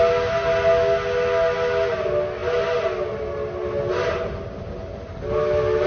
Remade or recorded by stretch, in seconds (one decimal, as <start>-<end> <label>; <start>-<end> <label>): 0.0-5.9 recorded